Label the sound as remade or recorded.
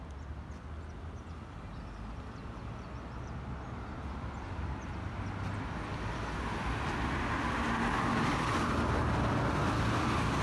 recorded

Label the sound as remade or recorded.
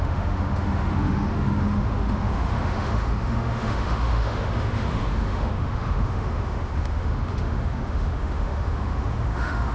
remade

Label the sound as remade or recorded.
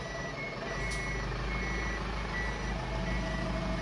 recorded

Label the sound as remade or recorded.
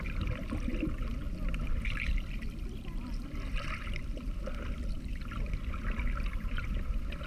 recorded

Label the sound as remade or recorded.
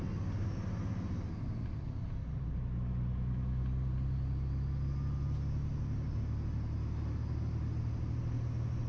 recorded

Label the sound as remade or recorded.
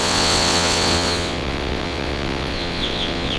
remade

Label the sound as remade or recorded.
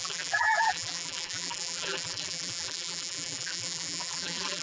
remade